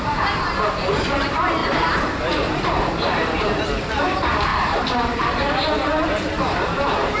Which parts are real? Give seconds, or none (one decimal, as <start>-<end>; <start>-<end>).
0.0-1.6; 2.8-4.5; 5.7-7.2